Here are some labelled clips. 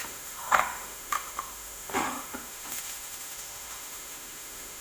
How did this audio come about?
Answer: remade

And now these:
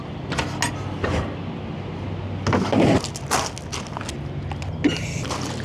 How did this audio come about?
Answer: recorded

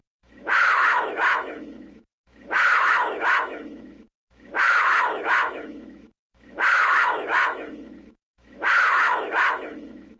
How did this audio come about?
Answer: remade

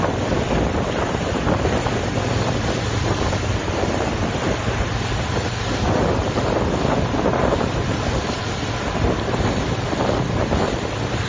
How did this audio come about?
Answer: remade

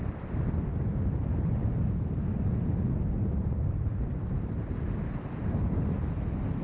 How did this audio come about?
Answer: recorded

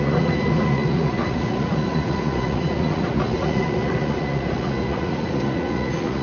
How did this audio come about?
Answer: remade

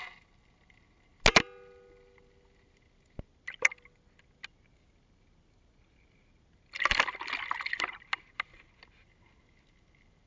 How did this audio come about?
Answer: recorded